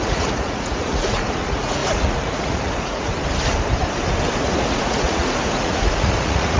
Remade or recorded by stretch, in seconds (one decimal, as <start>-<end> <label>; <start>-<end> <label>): 0.0-3.1 remade; 3.1-4.4 recorded; 4.4-6.6 remade